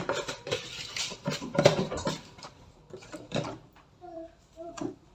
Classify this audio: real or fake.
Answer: fake